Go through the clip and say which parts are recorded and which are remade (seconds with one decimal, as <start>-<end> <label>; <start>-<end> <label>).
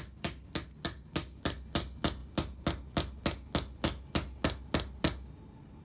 0.0-5.8 recorded